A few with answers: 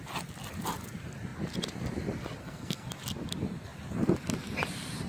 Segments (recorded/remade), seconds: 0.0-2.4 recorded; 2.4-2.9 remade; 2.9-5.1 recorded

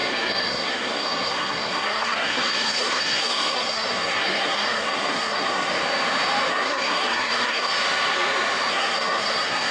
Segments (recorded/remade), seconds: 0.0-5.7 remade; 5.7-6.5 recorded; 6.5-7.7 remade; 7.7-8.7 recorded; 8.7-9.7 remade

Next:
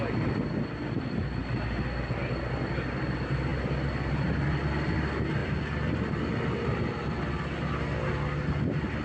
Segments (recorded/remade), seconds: 0.0-9.0 recorded